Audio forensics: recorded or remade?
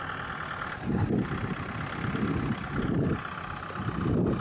recorded